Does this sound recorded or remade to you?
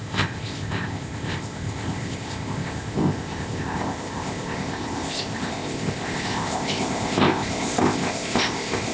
remade